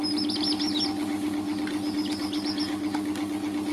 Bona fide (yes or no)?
no